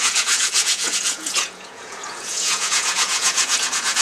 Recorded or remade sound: remade